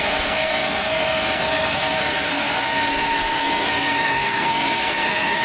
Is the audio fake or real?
fake